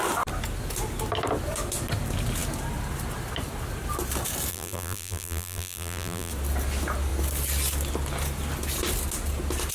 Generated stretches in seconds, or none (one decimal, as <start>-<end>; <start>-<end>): 4.5-6.3